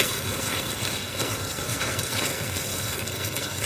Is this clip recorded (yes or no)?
no